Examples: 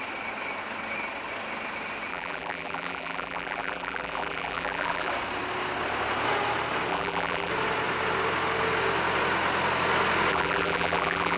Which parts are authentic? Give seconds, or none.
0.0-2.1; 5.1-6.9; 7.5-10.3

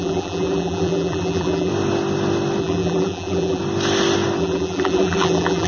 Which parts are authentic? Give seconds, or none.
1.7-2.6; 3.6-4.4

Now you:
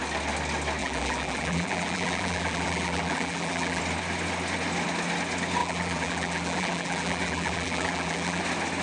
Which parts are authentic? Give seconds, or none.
0.0-0.8; 3.8-5.6; 8.4-8.8